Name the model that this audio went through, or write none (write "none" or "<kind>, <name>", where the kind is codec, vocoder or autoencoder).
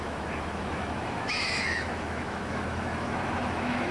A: autoencoder, DAC-VAE